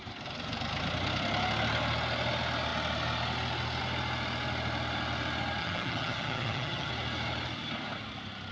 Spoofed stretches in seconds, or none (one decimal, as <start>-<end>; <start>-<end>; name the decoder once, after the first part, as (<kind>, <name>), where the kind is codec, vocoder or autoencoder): 5.6-6.9 (vocoder, HiFi-GAN)